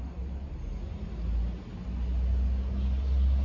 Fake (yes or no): no